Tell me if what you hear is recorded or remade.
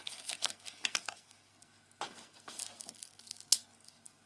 remade